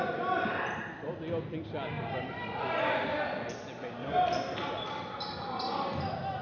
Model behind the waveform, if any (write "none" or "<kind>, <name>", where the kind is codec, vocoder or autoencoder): none